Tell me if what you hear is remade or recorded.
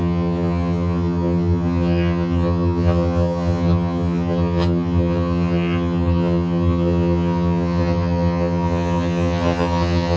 remade